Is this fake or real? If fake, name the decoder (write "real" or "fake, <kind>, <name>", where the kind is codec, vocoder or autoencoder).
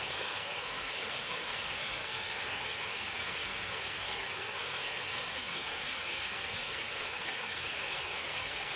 fake, codec, SNAC